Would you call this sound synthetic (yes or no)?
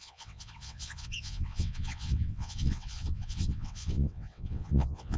yes